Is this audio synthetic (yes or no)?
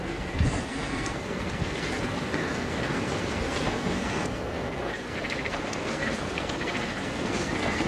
yes